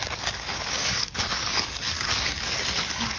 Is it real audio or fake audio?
fake